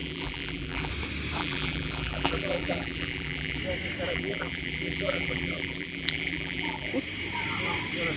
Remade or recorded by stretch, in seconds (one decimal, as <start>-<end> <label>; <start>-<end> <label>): 0.0-0.9 remade; 0.9-1.4 recorded; 1.4-3.6 remade; 3.6-4.1 recorded; 4.1-6.9 remade; 6.9-8.2 recorded